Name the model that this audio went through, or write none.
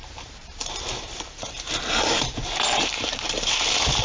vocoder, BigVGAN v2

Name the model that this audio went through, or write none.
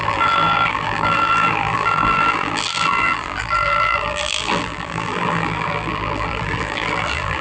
vocoder, BigVGAN v2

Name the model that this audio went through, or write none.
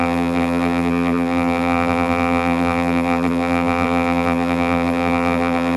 vocoder, BigVGAN v2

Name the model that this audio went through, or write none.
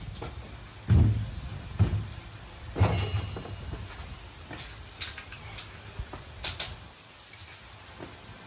none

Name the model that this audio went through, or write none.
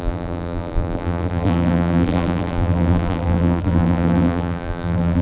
vocoder, BigVGAN v2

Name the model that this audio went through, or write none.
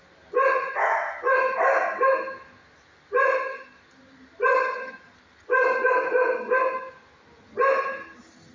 none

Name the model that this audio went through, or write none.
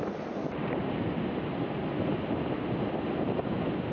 none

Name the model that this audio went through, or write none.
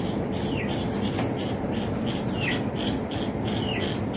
none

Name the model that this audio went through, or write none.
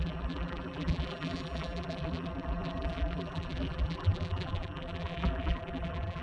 vocoder, BigVGAN v2